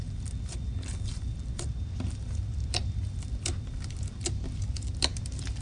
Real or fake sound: real